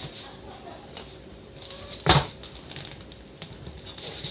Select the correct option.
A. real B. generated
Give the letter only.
A